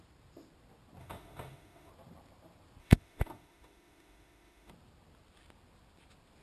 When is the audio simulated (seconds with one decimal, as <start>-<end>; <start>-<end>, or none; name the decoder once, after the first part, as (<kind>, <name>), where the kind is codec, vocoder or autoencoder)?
1.0-1.9 (autoencoder, DAC-VAE); 2.8-4.7